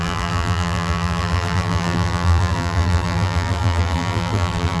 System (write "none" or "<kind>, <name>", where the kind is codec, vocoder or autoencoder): vocoder, BigVGAN v2